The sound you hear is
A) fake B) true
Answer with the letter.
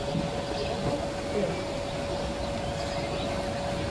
B